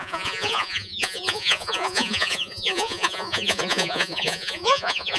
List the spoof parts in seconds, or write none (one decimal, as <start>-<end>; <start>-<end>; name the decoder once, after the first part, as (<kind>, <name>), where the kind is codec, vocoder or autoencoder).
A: 0.0-5.2 (vocoder, Vocos)